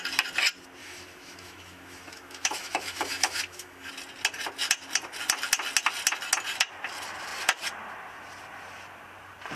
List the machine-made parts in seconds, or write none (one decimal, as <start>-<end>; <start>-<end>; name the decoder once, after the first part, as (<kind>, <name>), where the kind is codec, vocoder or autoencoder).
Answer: 0.8-3.9 (autoencoder, DAC-VAE)